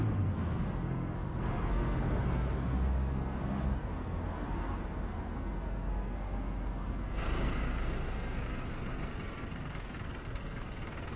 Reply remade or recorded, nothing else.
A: remade